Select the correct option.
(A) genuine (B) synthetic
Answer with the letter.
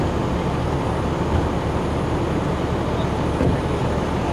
A